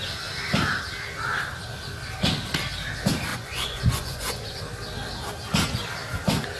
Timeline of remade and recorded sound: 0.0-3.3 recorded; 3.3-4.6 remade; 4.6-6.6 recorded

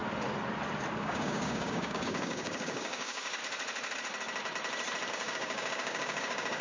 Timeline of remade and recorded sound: 0.0-1.0 recorded; 1.0-3.4 remade; 3.4-5.1 recorded; 5.1-6.6 remade

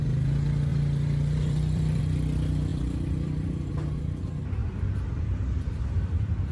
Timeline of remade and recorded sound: 0.0-0.7 recorded; 0.7-2.0 remade; 2.0-2.7 recorded; 2.7-3.7 remade; 3.7-4.6 recorded; 4.6-6.1 remade; 6.1-6.5 recorded

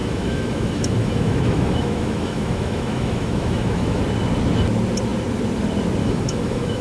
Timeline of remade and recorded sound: 0.0-4.0 remade; 4.0-6.0 recorded; 6.0-6.8 remade

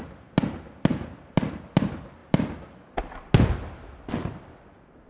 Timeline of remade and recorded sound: 0.0-5.1 recorded

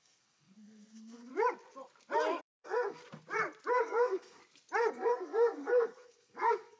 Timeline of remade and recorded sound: 0.0-1.3 remade; 1.3-2.4 recorded; 2.4-3.0 remade; 3.0-3.8 recorded; 3.8-4.4 remade; 4.4-4.9 recorded; 4.9-6.8 remade

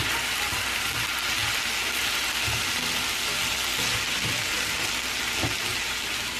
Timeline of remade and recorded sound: 0.0-6.4 recorded

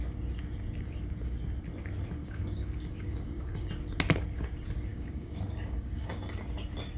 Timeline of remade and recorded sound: 0.0-2.2 recorded; 2.2-3.7 remade; 3.7-4.9 recorded; 4.9-6.4 remade; 6.4-7.0 recorded